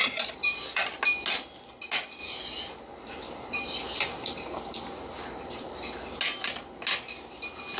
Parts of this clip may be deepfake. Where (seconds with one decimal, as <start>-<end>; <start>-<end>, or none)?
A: 0.4-1.0; 2.2-6.2